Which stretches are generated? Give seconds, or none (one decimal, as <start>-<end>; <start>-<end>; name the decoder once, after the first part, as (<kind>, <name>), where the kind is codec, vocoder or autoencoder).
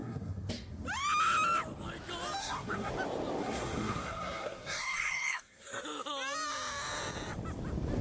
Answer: 0.0-0.5 (codec, SNAC); 2.4-2.9; 3.4-5.8